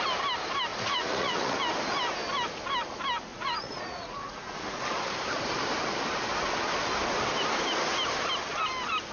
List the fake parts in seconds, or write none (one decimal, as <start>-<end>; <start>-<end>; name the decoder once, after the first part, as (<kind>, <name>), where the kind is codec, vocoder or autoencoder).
0.7-1.6 (vocoder, Vocos); 3.3-4.8